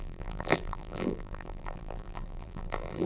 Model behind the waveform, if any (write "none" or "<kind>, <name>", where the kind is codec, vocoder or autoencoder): vocoder, BigVGAN v2